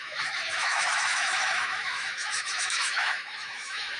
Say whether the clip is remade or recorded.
remade